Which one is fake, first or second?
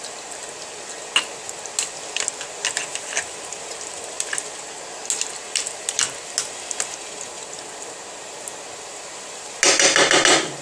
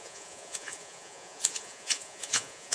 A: second